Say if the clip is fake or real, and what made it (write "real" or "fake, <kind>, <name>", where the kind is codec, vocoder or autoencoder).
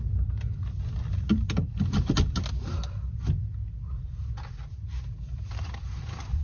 real